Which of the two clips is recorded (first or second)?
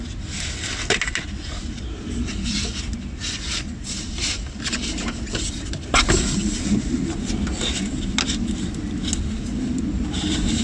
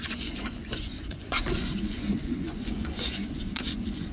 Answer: first